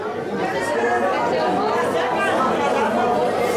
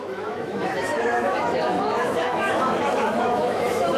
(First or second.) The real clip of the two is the first